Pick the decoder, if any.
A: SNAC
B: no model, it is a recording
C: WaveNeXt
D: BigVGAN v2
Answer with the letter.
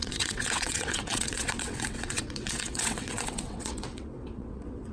C